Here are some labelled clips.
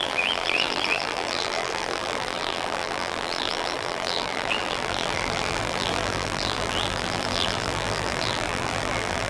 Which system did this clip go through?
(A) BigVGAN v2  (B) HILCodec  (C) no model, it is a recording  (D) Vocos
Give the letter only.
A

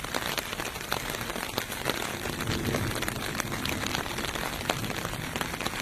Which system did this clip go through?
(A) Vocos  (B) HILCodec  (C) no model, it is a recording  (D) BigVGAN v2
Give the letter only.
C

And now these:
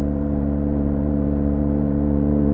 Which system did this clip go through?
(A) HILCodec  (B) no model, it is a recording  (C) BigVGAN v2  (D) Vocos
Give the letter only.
C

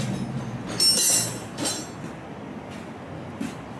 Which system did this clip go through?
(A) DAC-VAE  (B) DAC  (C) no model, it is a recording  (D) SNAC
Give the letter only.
C